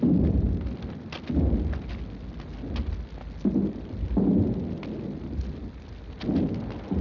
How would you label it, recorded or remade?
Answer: recorded